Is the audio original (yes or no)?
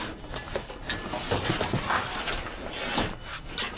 yes